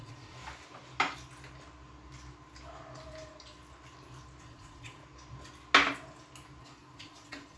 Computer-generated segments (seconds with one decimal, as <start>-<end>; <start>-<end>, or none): 0.0-0.4; 4.4-5.0; 6.6-7.6